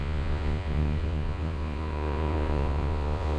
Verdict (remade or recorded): remade